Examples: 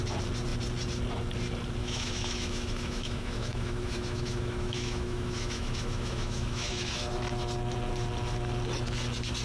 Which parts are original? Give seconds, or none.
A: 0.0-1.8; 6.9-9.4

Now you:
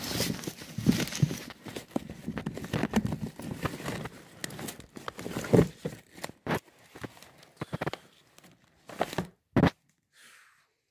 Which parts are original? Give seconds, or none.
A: 0.0-10.9

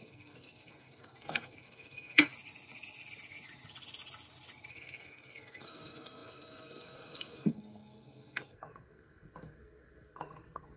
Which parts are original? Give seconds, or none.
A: 2.3-4.7

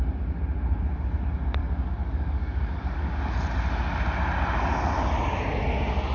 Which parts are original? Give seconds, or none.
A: 0.0-1.6; 3.2-6.1

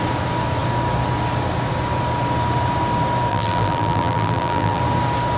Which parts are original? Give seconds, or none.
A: 0.0-3.3; 4.8-5.4

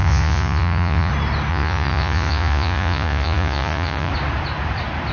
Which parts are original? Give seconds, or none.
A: 1.1-1.5; 4.1-5.1